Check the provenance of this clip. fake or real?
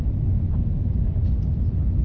real